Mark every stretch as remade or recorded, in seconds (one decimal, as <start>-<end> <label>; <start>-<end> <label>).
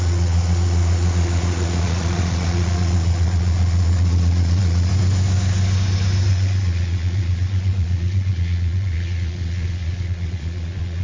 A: 0.0-4.9 remade; 4.9-6.3 recorded; 6.3-11.0 remade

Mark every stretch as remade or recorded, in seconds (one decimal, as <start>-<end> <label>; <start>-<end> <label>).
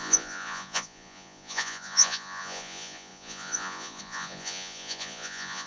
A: 0.0-5.7 remade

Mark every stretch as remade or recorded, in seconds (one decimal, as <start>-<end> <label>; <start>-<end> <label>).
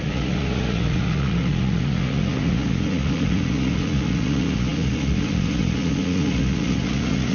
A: 0.0-7.3 remade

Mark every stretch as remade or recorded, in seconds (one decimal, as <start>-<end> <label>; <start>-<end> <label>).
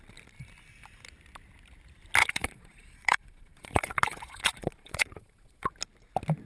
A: 0.0-2.2 recorded; 2.2-5.7 remade; 5.7-6.5 recorded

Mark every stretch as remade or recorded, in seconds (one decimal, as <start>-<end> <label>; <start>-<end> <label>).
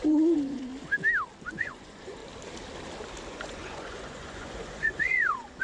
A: 0.0-0.7 remade; 0.7-1.4 recorded; 1.4-2.2 remade; 2.2-3.3 recorded; 3.3-5.6 remade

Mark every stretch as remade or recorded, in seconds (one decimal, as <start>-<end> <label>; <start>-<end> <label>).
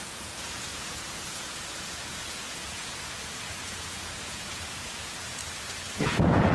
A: 0.0-5.4 remade; 5.4-5.9 recorded; 5.9-6.5 remade